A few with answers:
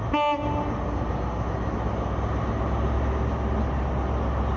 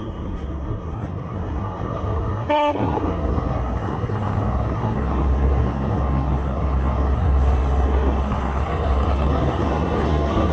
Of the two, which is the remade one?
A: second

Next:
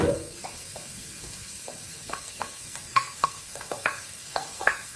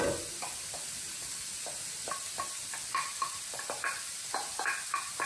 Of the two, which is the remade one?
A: first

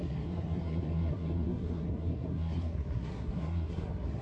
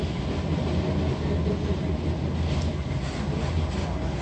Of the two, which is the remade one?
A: first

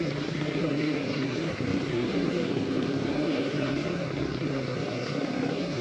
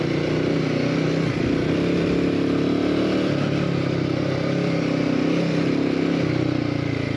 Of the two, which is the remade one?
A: first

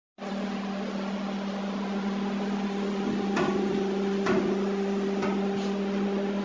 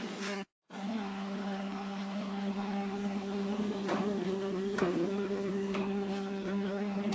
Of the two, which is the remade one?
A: second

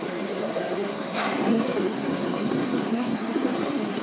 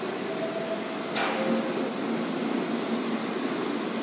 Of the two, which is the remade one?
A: first